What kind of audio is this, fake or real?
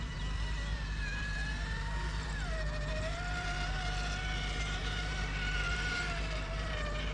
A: fake